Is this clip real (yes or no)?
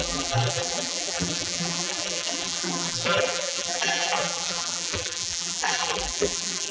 no